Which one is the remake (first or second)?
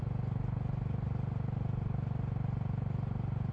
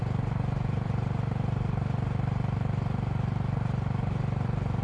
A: second